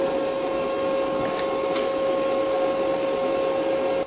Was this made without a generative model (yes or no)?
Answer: yes